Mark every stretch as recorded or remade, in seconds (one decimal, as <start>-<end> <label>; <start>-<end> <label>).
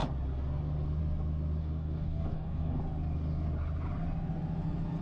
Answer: 0.0-1.6 recorded; 1.6-2.8 remade; 2.8-5.0 recorded